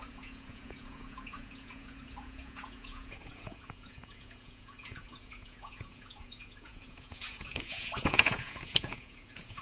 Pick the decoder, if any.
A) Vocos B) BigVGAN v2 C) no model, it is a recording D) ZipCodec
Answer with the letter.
A